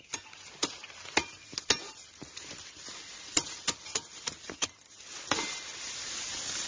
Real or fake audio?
real